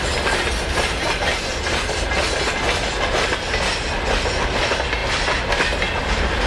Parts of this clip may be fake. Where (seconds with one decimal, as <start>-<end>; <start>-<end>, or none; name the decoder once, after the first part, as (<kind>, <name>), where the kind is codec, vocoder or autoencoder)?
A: none